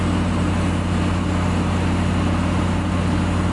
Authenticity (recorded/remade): recorded